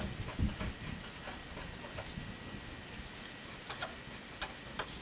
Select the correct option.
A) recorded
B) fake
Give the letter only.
A